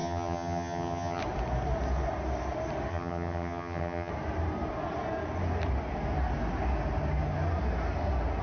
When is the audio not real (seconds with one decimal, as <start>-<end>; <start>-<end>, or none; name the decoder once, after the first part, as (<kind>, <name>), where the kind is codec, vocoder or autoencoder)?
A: 0.0-1.2 (vocoder, HiFi-GAN); 2.9-4.1